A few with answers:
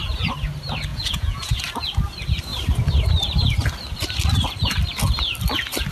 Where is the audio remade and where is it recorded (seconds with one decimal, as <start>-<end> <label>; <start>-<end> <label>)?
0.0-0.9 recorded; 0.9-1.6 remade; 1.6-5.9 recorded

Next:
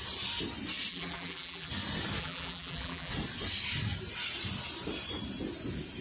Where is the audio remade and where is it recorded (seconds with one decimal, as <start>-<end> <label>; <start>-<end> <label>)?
0.0-0.9 recorded; 0.9-1.7 remade; 1.7-2.2 recorded; 2.2-3.1 remade; 3.1-6.0 recorded

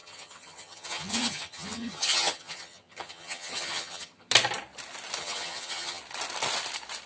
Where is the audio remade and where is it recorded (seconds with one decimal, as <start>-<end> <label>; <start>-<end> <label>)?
0.0-4.3 remade; 4.3-5.2 recorded; 5.2-6.0 remade; 6.0-7.1 recorded

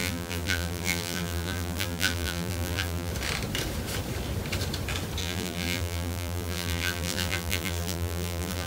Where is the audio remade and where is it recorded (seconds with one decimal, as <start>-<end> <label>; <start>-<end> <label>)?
0.0-3.1 remade; 3.1-5.2 recorded; 5.2-8.7 remade

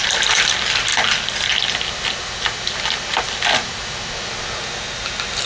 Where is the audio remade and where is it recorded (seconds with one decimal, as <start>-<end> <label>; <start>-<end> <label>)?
0.0-5.5 recorded

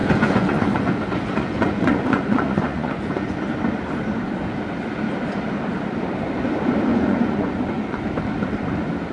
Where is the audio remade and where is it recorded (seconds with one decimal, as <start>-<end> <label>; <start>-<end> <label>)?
0.0-3.5 remade; 3.5-6.9 recorded; 6.9-8.0 remade; 8.0-9.1 recorded